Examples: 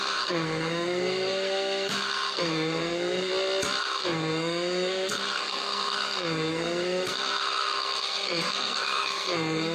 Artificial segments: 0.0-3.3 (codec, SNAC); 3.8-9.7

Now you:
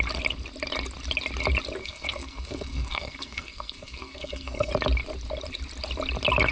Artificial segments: 1.8-4.7 (codec, SNAC)

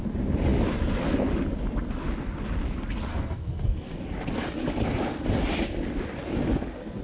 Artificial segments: 3.1-4.0 (codec, SNAC)

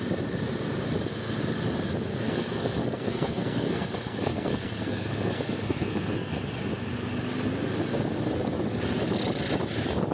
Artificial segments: 2.1-6.3 (codec, SNAC)

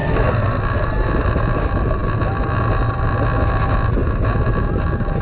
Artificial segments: 0.0-0.6 (codec, SNAC)

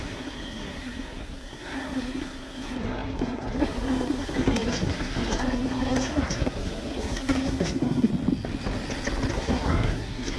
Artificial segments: 0.0-8.1 (codec, SNAC); 9.3-10.4

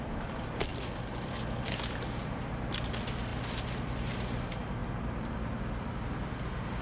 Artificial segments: none

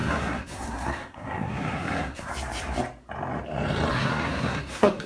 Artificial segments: 0.0-2.3 (codec, SNAC); 3.9-5.1